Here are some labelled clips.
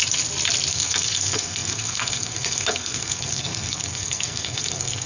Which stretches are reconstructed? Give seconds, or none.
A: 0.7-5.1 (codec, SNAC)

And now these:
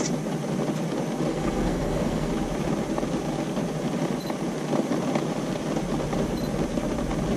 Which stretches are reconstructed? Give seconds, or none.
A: 1.3-2.3 (codec, SNAC)

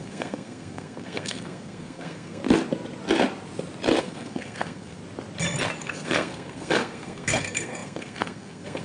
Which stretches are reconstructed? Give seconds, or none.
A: 0.0-2.4 (codec, SNAC); 4.0-5.0; 5.8-8.8